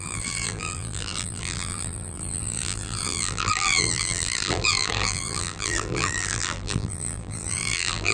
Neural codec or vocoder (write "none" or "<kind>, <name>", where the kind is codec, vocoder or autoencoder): vocoder, BigVGAN v2